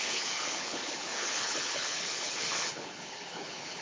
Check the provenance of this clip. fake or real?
fake